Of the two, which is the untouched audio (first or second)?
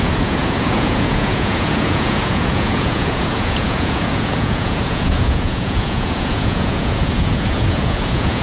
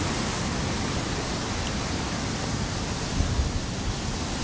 second